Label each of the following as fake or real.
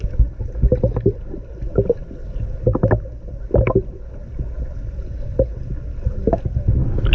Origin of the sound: real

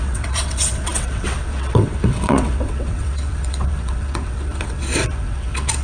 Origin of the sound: fake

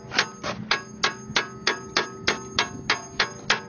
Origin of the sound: real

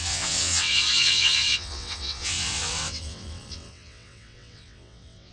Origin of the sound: fake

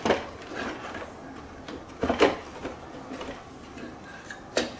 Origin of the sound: real